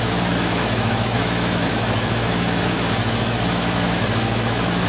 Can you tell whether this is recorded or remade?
remade